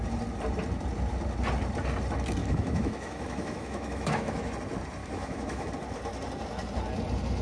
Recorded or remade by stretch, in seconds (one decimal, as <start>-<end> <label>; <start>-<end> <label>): 0.0-2.4 recorded; 2.4-4.5 remade; 4.5-5.0 recorded; 5.0-5.7 remade; 5.7-7.4 recorded